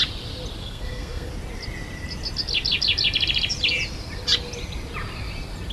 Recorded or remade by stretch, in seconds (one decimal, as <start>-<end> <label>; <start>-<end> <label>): 0.0-0.6 recorded; 0.6-1.3 remade; 1.3-5.7 recorded